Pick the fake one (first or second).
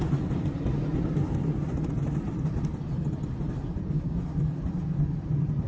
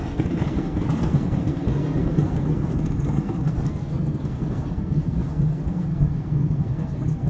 second